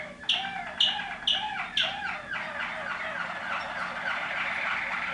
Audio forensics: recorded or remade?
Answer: recorded